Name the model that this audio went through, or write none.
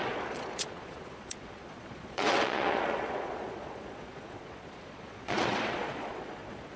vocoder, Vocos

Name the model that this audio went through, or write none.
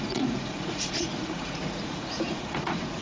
vocoder, Vocos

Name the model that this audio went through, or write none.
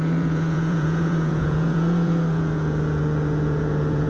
vocoder, Vocos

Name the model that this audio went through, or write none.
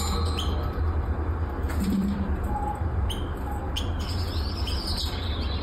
none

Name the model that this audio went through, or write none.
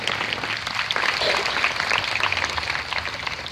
none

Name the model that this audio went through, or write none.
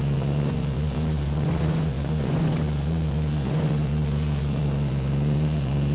vocoder, Vocos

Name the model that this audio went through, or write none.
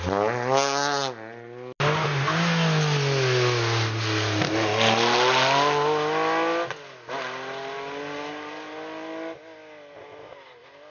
none